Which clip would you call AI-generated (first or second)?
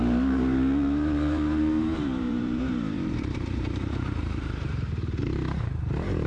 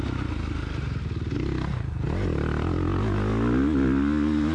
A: first